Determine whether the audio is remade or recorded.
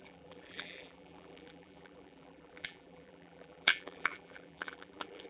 remade